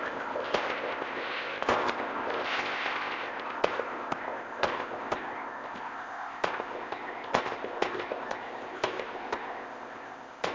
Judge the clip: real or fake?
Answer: fake